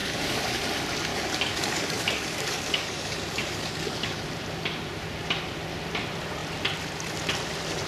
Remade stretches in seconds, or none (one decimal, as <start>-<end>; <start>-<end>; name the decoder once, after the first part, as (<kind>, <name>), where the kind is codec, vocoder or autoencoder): 0.0-0.6 (codec, DAC); 1.1-4.2